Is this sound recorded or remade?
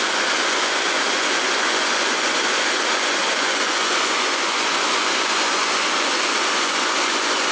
remade